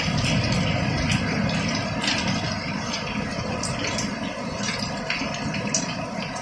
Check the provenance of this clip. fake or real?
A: real